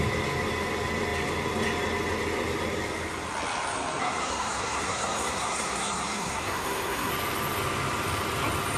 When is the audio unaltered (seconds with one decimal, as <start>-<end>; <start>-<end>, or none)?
0.0-4.0; 7.1-8.8